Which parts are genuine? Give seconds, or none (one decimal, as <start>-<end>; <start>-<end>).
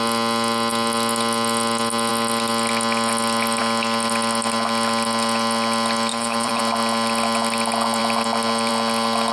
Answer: 0.0-6.1; 6.6-9.3